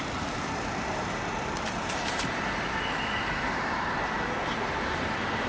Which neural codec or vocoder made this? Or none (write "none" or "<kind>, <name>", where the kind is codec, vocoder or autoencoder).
vocoder, BigVGAN v2